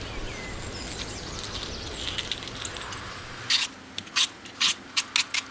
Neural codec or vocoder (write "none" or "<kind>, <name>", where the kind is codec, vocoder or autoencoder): none